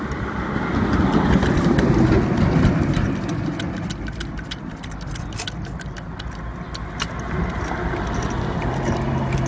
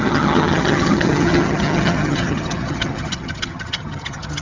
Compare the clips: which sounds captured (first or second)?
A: first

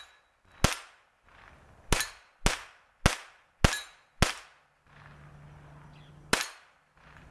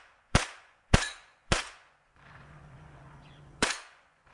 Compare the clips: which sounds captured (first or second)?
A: first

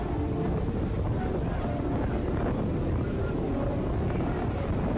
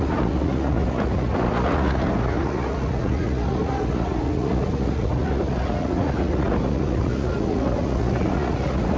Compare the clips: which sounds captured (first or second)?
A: first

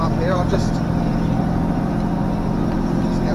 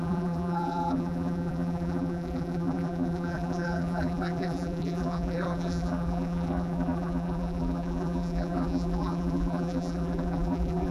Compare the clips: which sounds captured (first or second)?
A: first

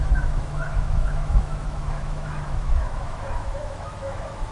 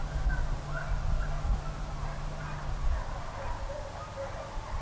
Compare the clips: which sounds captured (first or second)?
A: second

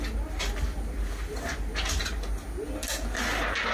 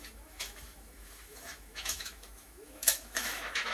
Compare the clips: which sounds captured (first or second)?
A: first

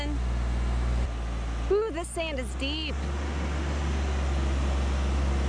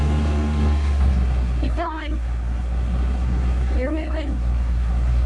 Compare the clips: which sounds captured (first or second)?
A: first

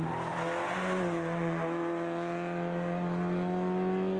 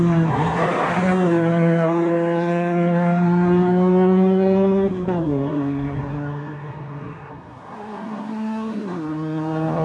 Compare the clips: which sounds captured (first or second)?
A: first